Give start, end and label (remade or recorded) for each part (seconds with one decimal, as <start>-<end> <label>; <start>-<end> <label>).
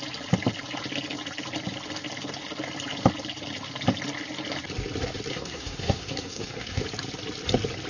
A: 0.0-5.3 recorded; 5.3-6.8 remade; 6.8-7.9 recorded